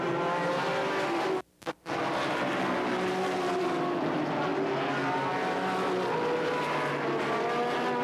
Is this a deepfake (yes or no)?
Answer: no